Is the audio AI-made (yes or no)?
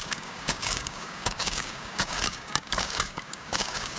yes